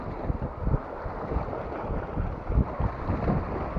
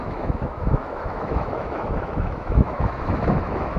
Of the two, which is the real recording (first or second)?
first